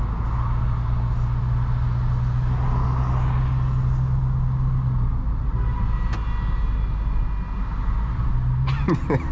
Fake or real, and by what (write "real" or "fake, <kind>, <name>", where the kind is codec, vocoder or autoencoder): real